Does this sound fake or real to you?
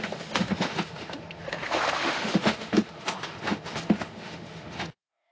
fake